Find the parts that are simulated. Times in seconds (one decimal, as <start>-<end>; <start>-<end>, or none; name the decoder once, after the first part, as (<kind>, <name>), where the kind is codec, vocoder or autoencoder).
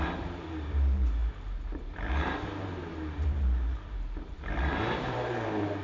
0.0-5.8 (vocoder, BigVGAN v2)